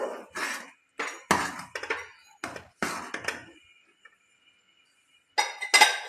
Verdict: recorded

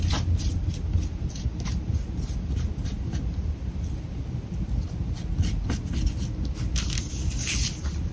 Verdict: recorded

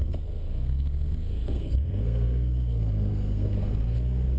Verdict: remade